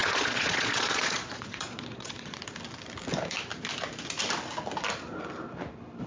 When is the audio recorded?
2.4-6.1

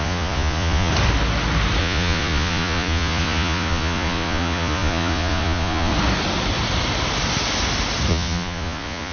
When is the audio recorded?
0.9-1.8; 5.9-8.1

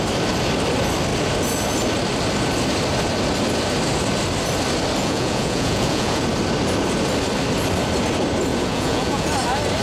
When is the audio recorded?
0.0-5.0; 6.2-8.5; 9.3-9.8

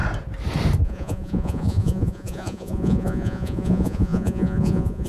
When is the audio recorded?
0.0-0.8

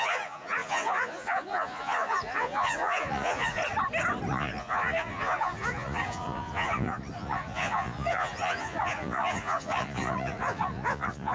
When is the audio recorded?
3.6-4.3